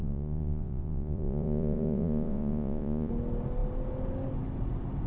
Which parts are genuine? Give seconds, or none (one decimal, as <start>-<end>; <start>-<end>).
3.1-5.1